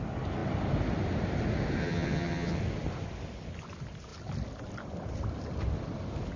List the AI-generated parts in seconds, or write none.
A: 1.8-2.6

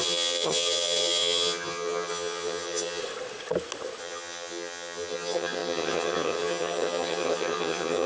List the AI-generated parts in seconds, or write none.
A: 0.0-3.0; 4.0-8.1

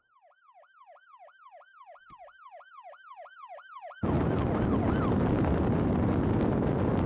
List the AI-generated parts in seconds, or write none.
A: none

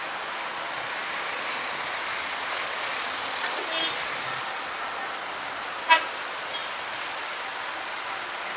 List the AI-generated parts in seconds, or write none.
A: none

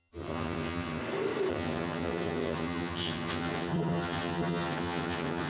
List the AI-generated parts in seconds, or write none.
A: 0.0-1.0; 1.5-5.5